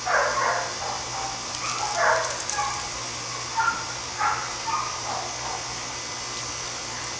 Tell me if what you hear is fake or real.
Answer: real